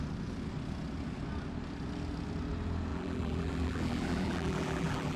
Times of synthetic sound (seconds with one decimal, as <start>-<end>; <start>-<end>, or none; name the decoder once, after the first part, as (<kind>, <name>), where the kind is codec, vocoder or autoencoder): 2.9-5.2 (vocoder, BigVGAN v2)